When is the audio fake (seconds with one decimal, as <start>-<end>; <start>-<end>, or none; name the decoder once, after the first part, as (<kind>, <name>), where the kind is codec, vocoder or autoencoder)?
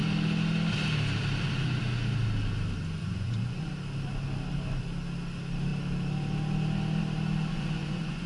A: 3.0-3.7 (vocoder, Vocos); 7.5-8.3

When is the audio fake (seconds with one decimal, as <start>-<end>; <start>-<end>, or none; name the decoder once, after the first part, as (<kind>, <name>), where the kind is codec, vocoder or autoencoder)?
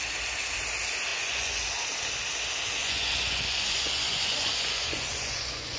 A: 1.1-1.6 (vocoder, Vocos); 2.8-5.8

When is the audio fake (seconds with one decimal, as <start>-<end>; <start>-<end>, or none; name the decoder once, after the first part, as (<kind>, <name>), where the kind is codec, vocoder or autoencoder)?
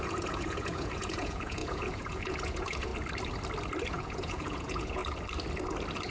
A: 0.0-2.9 (vocoder, Vocos); 3.8-5.0